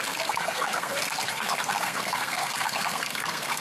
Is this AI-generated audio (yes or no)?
yes